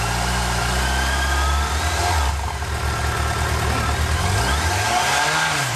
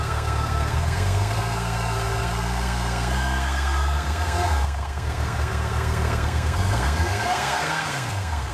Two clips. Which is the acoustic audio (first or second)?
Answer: first